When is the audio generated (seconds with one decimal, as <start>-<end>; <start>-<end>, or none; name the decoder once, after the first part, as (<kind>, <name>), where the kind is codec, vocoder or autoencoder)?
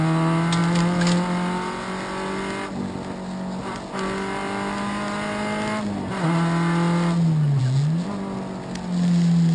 none